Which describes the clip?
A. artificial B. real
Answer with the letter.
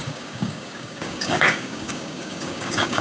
A